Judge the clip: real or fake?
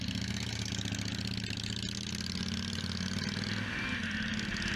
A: real